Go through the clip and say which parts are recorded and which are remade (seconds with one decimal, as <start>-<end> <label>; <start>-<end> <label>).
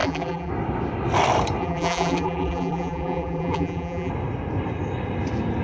0.0-0.5 remade; 0.5-1.6 recorded; 1.6-4.1 remade; 4.1-5.6 recorded